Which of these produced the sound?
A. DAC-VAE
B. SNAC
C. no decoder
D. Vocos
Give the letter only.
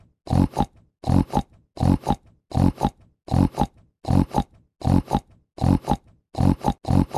C